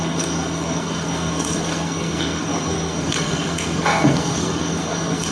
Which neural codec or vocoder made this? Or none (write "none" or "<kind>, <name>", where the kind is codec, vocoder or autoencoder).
codec, SNAC